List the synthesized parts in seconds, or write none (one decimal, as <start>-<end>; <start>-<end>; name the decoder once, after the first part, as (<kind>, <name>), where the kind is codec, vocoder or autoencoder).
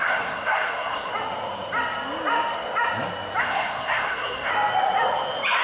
0.0-1.1 (codec, SNAC); 3.4-4.5